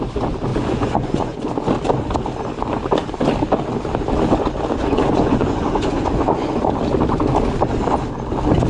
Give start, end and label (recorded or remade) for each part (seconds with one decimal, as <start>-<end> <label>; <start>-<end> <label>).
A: 0.0-0.5 recorded; 0.5-1.4 remade; 1.4-4.8 recorded; 4.8-6.6 remade; 6.6-8.7 recorded